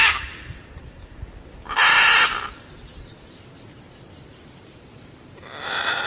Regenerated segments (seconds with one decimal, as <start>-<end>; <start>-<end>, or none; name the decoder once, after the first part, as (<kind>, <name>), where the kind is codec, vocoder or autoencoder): 4.3-6.1 (vocoder, BigVGAN v2)